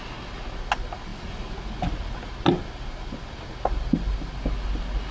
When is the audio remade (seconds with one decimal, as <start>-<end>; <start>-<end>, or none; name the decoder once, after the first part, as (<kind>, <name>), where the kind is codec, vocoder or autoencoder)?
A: none